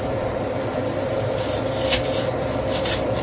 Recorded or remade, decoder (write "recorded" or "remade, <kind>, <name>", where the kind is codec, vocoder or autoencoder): recorded